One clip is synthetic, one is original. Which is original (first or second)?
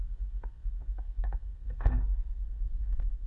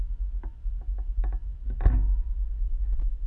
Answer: second